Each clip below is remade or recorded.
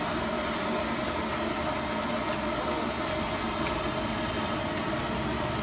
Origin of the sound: recorded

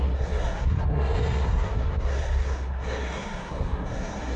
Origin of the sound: remade